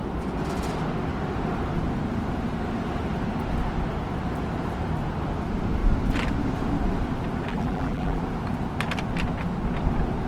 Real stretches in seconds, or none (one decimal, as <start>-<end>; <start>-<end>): 0.0-7.5; 8.2-10.3